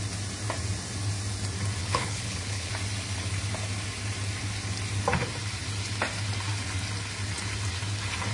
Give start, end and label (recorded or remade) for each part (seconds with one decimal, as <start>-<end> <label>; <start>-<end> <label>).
0.0-1.8 recorded; 1.8-2.7 remade; 2.7-8.3 recorded